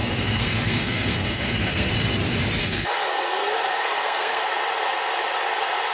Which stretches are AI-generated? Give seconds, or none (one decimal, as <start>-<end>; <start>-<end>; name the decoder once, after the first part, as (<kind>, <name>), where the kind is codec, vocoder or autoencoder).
0.0-1.9 (codec, SNAC); 2.6-4.4

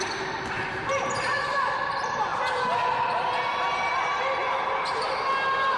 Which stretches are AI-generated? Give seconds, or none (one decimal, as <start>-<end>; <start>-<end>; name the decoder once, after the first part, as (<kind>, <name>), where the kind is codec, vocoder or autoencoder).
none

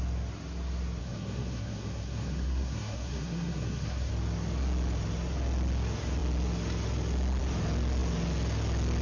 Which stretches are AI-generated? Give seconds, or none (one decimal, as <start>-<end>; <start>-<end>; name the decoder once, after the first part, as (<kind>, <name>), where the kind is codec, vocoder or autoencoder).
1.0-4.1 (codec, SNAC)

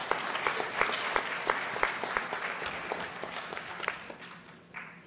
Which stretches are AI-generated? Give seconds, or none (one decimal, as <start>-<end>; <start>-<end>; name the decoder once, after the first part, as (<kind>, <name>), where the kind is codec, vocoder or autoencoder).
3.2-3.8 (codec, DAC)

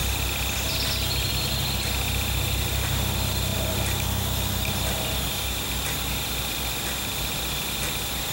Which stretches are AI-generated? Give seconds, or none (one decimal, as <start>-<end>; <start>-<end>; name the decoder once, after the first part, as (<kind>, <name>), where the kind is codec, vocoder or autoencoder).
none